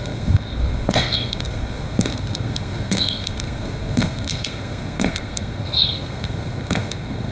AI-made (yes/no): yes